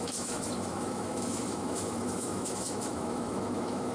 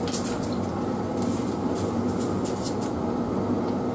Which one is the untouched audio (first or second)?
second